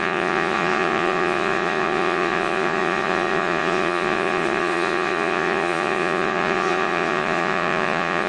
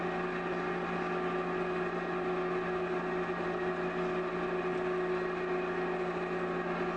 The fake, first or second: first